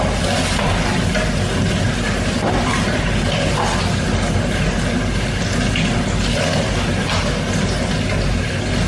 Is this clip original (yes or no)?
yes